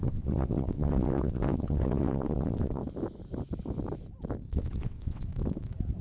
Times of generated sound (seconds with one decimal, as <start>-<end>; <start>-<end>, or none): 0.0-2.8; 4.5-5.3